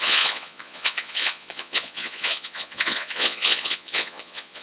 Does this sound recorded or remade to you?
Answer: remade